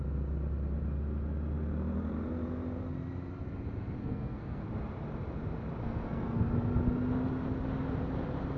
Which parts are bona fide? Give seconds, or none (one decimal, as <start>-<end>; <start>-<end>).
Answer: 0.0-4.0; 4.6-5.8; 6.4-8.6

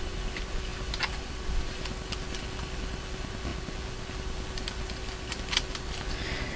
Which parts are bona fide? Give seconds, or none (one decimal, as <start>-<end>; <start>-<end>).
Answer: 0.0-6.6

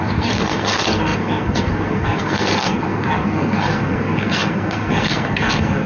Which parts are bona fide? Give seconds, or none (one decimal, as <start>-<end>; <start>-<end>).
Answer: none

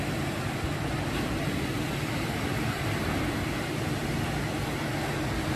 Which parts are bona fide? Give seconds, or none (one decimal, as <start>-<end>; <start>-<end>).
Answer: 0.0-1.5; 4.8-5.6

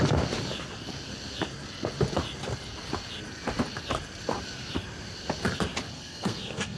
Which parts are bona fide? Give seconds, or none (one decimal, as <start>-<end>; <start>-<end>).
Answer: 0.0-5.9

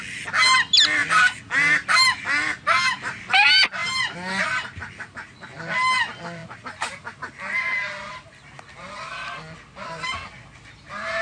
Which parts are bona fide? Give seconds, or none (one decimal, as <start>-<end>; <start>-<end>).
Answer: 0.0-11.2

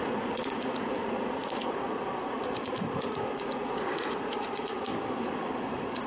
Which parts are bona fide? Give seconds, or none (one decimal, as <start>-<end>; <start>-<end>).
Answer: 4.9-5.6